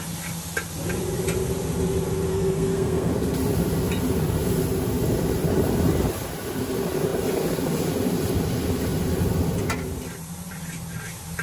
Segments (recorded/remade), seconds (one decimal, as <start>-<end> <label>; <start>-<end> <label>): 0.0-2.3 recorded; 2.3-3.1 remade; 3.1-11.4 recorded